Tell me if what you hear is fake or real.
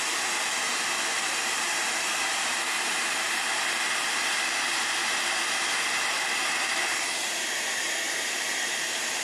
fake